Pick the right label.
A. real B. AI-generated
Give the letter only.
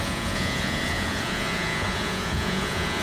B